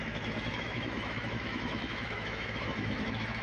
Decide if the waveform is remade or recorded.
remade